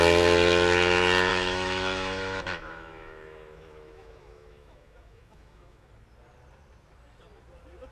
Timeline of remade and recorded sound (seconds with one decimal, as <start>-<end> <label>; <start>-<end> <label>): 0.0-1.3 recorded; 1.3-5.9 remade; 5.9-7.9 recorded